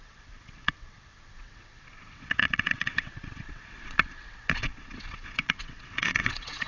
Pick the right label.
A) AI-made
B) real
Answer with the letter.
A